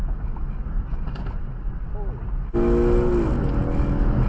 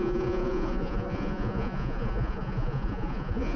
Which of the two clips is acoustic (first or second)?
first